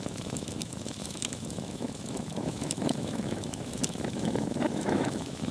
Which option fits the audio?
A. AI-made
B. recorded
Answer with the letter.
A